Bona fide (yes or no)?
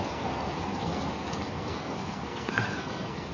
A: no